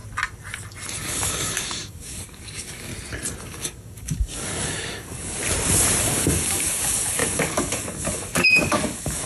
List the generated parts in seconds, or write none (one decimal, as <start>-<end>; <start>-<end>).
1.0-2.9; 3.4-5.4; 6.0-9.3